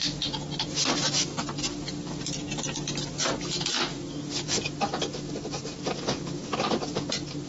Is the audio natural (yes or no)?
yes